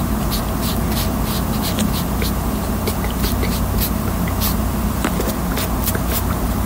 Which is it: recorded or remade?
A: recorded